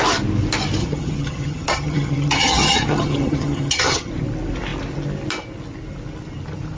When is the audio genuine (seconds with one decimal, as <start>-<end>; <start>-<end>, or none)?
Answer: 0.0-0.8; 4.1-6.8